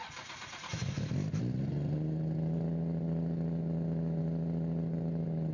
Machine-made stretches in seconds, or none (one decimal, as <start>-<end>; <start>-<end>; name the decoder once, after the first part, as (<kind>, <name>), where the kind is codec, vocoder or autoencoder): none